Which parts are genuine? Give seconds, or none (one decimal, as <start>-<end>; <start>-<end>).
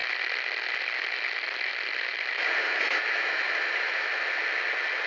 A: 0.0-2.6; 4.1-5.1